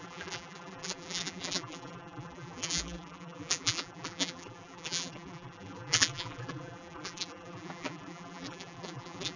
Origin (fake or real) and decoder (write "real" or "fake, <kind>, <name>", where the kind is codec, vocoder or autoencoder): fake, vocoder, BigVGAN v2